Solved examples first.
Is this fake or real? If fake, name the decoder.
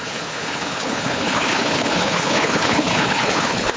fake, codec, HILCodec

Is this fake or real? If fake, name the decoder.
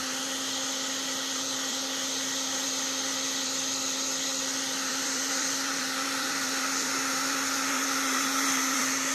fake, vocoder, BigVGAN v2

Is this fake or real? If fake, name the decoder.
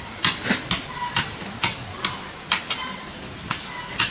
real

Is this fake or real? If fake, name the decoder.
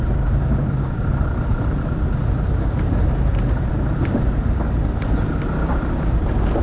fake, vocoder, BigVGAN v2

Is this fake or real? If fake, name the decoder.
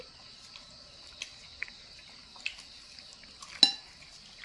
real